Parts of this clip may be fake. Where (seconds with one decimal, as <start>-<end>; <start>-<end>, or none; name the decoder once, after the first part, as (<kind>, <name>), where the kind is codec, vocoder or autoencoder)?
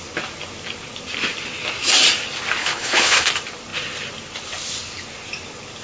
2.6-3.3 (codec, HILCodec)